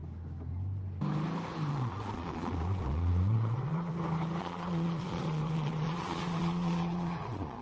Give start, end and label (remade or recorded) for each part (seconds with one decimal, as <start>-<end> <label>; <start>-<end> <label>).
0.0-1.7 recorded; 1.7-3.9 remade; 3.9-4.4 recorded; 4.4-7.6 remade